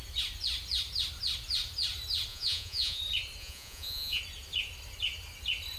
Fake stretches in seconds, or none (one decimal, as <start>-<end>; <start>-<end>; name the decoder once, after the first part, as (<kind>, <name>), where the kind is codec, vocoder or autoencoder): 2.3-3.0 (vocoder, Vocos); 3.4-4.2